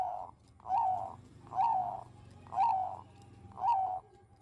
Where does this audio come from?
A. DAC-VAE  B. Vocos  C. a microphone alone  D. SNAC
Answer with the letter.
C